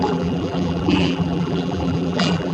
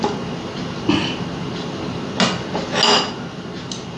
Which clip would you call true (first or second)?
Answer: second